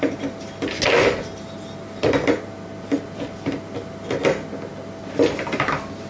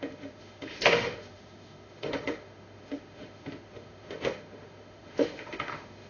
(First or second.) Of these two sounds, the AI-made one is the second